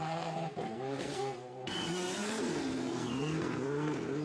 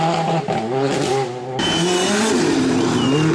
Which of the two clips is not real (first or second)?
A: first